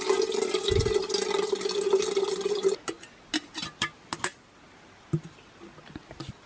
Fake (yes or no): no